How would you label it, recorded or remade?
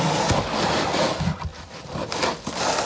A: recorded